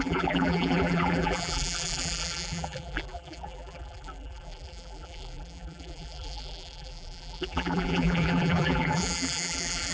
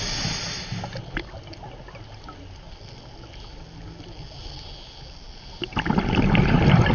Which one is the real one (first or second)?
second